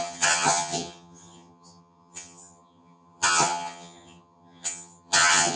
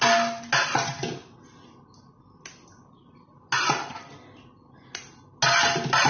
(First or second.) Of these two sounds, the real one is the second